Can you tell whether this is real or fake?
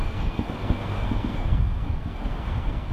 fake